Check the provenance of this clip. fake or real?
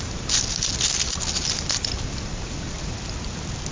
real